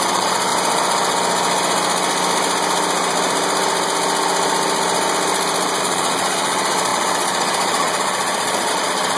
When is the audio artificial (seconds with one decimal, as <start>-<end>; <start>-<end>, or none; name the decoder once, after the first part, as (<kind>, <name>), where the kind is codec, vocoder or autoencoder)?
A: 0.0-0.5 (vocoder, Vocos); 5.8-9.2